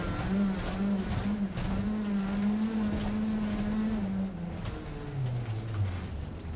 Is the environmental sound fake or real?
real